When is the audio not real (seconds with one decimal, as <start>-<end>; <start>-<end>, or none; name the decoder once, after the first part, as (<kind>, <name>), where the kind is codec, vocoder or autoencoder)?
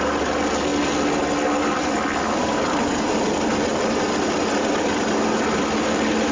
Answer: 3.7-4.4 (vocoder, BigVGAN v2)